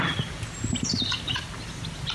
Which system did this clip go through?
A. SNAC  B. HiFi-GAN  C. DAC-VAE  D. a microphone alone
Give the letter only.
D